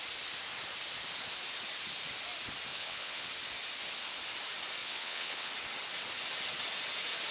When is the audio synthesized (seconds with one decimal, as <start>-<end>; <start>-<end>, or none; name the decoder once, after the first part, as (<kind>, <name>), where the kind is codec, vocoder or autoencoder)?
2.7-3.3 (vocoder, WaveNeXt); 4.8-5.5